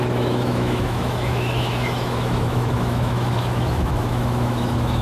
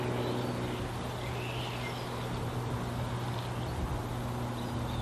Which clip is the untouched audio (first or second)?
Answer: second